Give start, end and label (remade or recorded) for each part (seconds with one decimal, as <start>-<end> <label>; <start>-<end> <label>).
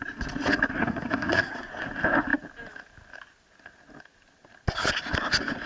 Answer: 0.0-0.8 recorded; 0.8-1.7 remade; 1.7-5.7 recorded